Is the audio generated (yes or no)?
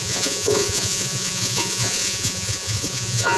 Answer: yes